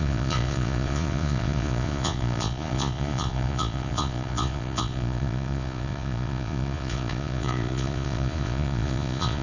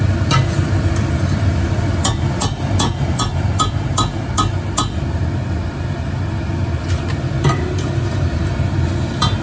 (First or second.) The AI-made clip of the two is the first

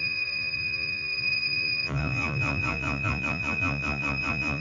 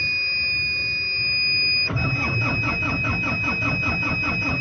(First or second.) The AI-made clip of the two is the first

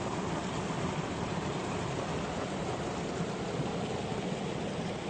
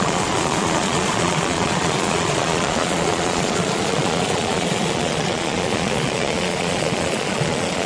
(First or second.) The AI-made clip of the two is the second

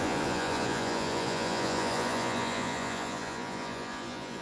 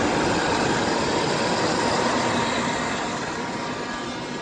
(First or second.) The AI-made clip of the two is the first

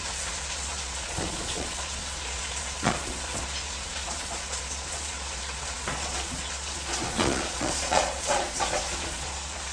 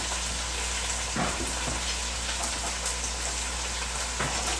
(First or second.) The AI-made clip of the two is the first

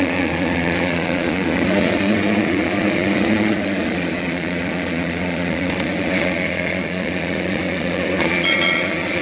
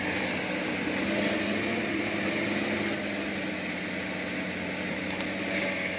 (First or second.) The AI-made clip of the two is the first